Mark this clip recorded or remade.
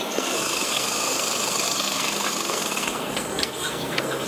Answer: remade